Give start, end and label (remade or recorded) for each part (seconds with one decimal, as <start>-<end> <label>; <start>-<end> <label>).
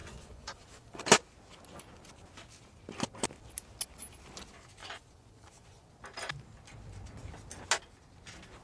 0.0-1.0 remade; 1.0-4.8 recorded; 4.8-5.9 remade; 5.9-8.6 recorded